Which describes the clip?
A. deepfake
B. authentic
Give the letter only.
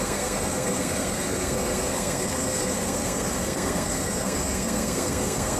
A